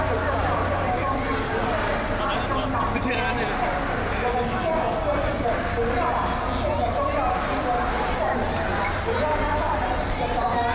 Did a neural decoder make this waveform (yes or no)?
no